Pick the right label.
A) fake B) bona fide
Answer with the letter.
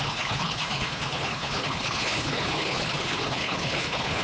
A